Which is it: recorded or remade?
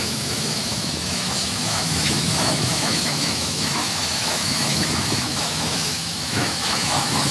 remade